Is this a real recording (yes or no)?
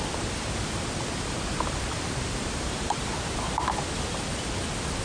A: yes